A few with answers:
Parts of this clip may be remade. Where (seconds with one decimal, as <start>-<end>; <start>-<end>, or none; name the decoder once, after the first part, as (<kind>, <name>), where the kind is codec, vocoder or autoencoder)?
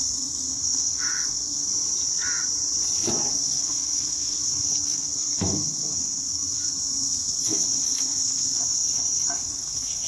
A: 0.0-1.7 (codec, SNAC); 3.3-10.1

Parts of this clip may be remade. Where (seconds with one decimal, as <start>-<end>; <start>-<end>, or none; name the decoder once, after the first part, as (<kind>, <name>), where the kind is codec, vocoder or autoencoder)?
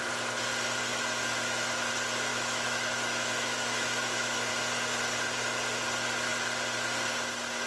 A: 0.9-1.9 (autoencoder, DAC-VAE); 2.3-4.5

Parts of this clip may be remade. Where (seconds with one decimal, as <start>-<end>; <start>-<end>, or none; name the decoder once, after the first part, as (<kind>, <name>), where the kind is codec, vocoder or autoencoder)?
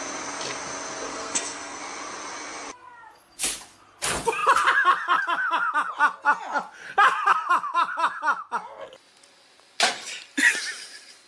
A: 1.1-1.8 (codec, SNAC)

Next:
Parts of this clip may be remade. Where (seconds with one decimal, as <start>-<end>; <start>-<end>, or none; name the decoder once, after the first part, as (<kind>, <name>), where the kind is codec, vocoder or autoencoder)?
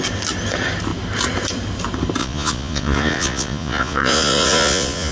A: 2.2-5.1 (vocoder, Vocos)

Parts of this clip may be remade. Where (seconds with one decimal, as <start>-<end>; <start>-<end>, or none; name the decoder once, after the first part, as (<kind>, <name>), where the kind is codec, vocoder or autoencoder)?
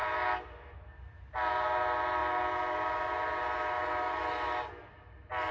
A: none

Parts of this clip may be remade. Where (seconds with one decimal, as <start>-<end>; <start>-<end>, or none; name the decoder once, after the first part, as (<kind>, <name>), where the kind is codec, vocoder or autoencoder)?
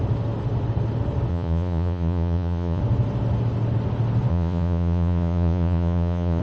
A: 1.3-2.8 (vocoder, Vocos); 4.3-6.4